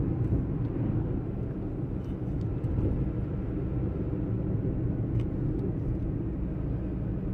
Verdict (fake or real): real